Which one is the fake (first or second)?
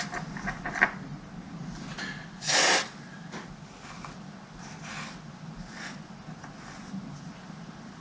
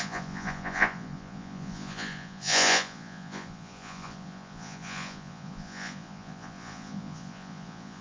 second